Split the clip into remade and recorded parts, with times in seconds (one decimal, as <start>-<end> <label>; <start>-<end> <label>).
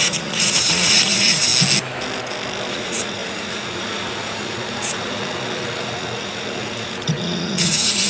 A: 0.0-1.5 remade; 1.5-2.7 recorded; 2.7-8.1 remade